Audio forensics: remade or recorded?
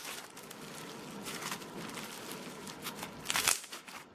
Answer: recorded